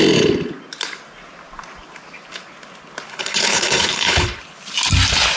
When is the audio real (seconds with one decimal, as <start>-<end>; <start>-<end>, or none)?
0.0-3.1; 4.4-5.4